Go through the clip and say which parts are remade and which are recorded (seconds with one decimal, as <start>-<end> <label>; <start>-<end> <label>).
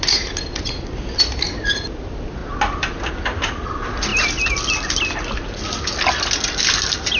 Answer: 0.0-7.2 recorded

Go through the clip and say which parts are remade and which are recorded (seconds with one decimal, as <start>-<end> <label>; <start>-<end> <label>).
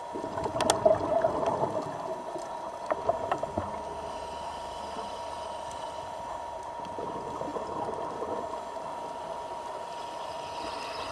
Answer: 0.0-11.1 recorded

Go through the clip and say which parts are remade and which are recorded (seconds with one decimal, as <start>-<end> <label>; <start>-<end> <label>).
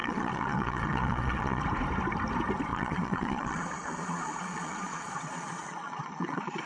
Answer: 0.0-1.6 remade; 1.6-2.7 recorded; 2.7-6.7 remade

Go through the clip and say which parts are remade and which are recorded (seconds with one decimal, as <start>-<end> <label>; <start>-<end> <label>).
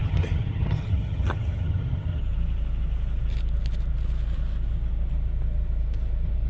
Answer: 0.0-2.2 remade; 2.2-6.5 recorded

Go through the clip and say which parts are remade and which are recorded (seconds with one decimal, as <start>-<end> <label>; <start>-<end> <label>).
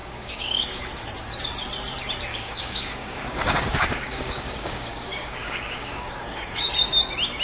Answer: 0.0-0.8 remade; 0.8-2.3 recorded; 2.3-6.7 remade; 6.7-7.4 recorded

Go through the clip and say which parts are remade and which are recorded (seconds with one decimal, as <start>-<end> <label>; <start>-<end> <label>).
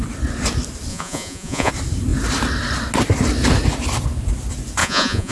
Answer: 0.0-0.9 recorded; 0.9-1.7 remade; 1.7-4.8 recorded; 4.8-5.3 remade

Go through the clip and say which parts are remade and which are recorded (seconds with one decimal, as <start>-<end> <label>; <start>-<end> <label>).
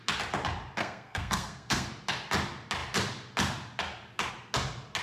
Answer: 0.0-0.8 recorded; 0.8-1.9 remade; 1.9-5.0 recorded